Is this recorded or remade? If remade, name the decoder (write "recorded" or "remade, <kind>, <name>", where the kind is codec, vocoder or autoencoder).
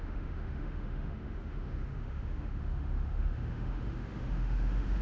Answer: remade, autoencoder, DAC-VAE